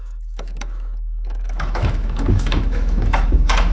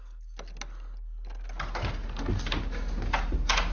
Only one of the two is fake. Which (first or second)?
first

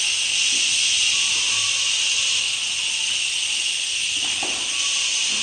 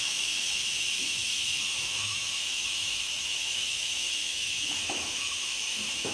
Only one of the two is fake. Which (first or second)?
second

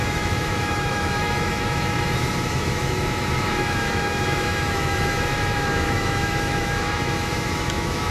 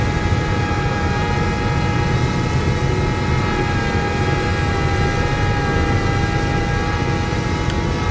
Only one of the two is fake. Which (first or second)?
first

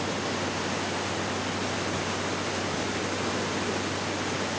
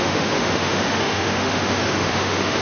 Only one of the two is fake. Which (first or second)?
second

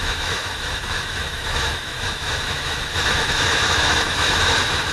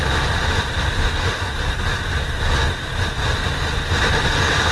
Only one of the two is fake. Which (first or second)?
first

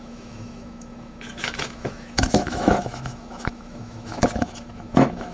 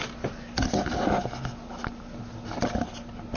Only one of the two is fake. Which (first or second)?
first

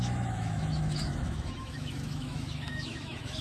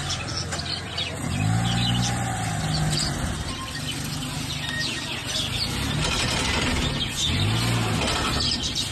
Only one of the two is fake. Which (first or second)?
first